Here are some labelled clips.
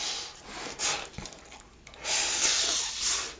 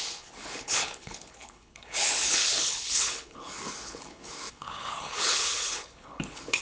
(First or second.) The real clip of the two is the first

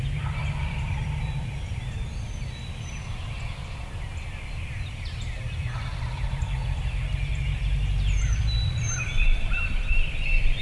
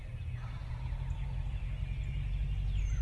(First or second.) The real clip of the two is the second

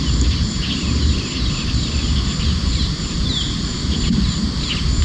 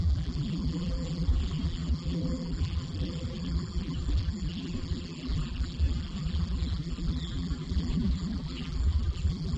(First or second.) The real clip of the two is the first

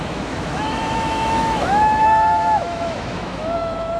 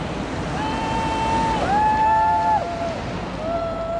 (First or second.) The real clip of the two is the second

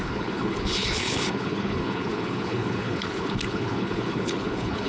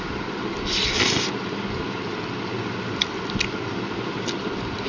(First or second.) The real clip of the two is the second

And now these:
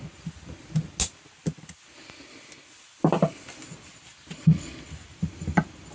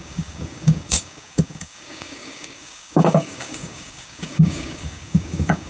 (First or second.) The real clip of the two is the first